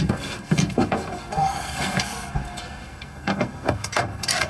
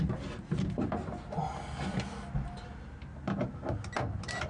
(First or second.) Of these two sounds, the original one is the second